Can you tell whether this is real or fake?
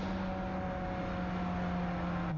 real